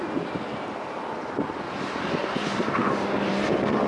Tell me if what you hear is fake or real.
real